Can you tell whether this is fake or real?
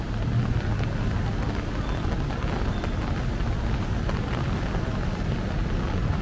real